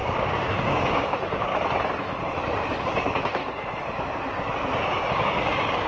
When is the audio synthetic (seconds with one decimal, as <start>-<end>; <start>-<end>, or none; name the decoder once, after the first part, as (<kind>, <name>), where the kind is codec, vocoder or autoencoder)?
0.0-1.5 (codec, DAC); 2.8-3.4; 5.1-5.9